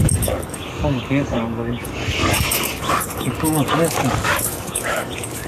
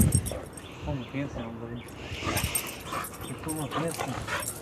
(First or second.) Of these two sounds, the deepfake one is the first